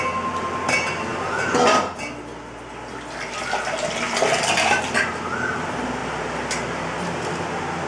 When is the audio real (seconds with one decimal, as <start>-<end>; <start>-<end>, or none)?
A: 0.0-7.9